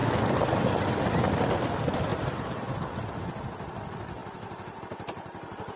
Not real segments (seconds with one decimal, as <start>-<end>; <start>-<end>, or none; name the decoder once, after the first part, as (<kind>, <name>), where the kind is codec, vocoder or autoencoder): none